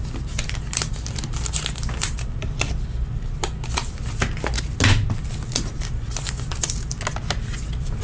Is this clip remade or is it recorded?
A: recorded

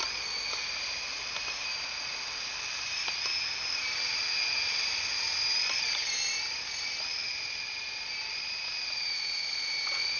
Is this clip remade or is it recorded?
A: recorded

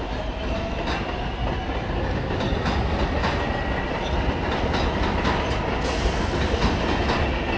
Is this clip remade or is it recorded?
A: recorded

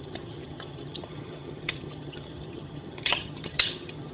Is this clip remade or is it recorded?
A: remade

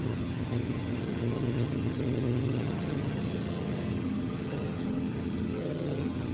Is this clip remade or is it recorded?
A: remade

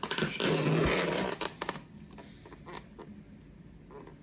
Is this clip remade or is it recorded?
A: recorded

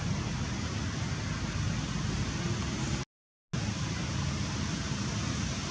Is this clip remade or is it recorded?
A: recorded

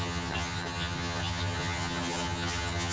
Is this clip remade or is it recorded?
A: remade